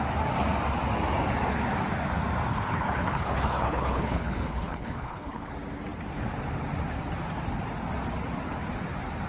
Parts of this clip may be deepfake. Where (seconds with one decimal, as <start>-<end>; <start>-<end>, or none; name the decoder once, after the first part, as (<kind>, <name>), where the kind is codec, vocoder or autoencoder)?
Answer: 2.5-5.5 (codec, HILCodec)